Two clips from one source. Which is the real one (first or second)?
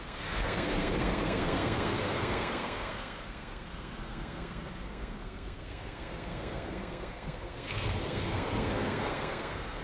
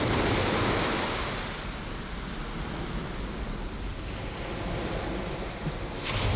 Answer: second